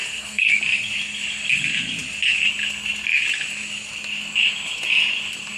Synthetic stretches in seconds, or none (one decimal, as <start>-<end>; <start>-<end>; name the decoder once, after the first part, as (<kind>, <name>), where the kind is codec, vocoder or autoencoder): 0.0-0.5 (codec, SNAC)